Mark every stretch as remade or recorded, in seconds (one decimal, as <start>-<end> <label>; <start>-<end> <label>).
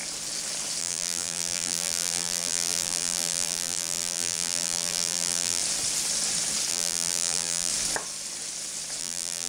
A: 0.0-0.8 recorded; 0.8-5.6 remade; 5.6-6.7 recorded; 6.7-7.7 remade; 7.7-9.0 recorded; 9.0-9.5 remade